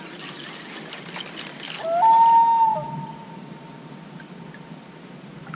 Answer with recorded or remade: recorded